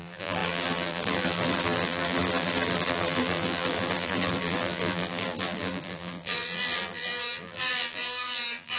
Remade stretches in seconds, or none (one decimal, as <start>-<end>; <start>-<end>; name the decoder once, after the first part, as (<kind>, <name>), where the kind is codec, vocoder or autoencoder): 0.0-8.8 (vocoder, BigVGAN v2)

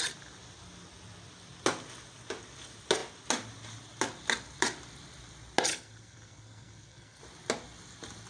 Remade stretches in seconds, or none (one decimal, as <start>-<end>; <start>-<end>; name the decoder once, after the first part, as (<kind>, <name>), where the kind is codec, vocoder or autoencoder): 5.7-7.2 (codec, SNAC)